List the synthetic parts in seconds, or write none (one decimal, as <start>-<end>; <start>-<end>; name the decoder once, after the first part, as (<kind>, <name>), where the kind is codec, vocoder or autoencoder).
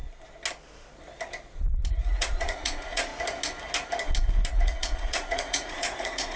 1.9-3.1 (vocoder, Vocos); 4.5-6.4